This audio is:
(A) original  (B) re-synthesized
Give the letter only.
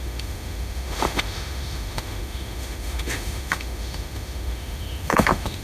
B